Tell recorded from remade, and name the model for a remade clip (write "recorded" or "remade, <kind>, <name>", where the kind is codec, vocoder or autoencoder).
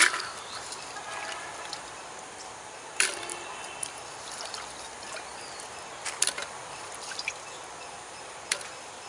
remade, vocoder, BigVGAN v2